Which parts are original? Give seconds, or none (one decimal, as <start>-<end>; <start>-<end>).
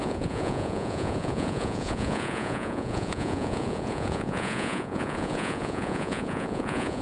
none